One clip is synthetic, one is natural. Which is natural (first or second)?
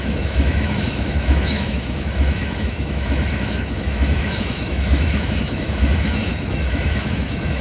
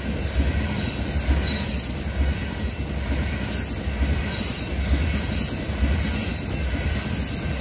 second